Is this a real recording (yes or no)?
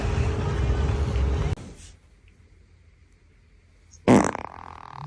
yes